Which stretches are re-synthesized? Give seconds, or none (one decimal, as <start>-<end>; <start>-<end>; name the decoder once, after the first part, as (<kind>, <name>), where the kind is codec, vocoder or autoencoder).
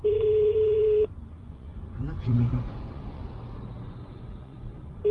0.0-3.2 (vocoder, Vocos); 3.8-5.1